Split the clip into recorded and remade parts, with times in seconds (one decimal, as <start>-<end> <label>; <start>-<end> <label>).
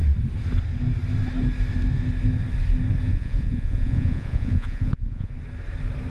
0.0-3.1 recorded; 3.1-5.3 remade; 5.3-6.1 recorded